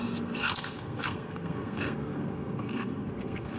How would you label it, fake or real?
fake